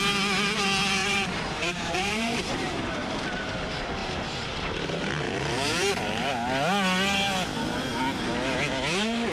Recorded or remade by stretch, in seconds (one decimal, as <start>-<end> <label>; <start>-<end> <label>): 0.0-1.0 recorded; 1.0-2.7 remade; 2.7-4.0 recorded; 4.0-6.3 remade; 6.3-9.3 recorded